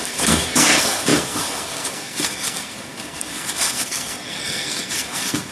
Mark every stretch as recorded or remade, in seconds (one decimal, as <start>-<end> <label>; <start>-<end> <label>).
0.0-5.5 remade